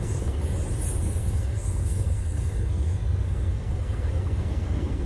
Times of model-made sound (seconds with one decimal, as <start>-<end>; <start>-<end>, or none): 0.0-0.4; 1.0-5.1